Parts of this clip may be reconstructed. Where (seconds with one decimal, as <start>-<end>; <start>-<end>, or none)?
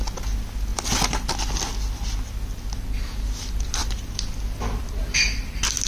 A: 3.8-5.0